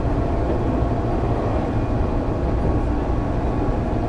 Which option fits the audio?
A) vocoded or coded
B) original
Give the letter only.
B